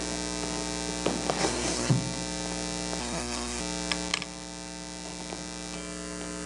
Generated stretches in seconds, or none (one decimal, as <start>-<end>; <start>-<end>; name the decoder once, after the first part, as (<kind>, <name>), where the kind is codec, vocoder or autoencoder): 1.4-1.9 (codec, SNAC); 3.0-3.6